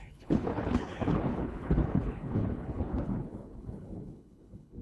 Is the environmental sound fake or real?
fake